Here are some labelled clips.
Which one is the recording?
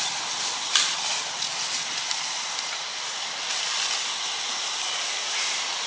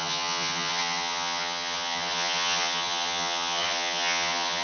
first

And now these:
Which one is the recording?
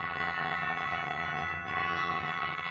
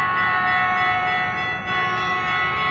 second